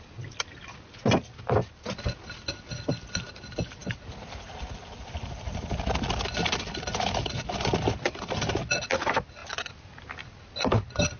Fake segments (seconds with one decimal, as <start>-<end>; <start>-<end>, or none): none